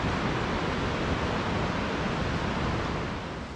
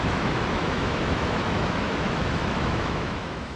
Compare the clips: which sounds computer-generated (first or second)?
second